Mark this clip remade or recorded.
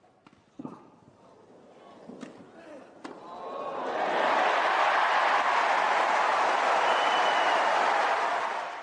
recorded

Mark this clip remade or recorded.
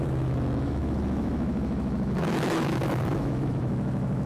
remade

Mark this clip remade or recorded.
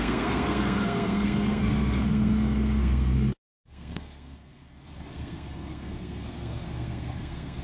remade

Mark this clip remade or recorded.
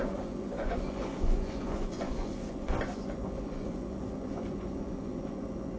remade